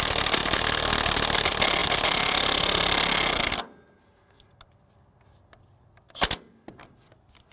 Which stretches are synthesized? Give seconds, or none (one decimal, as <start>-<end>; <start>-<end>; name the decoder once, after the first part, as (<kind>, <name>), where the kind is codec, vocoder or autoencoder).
none